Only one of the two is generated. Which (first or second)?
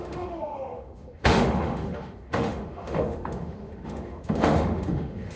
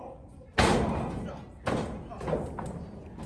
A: first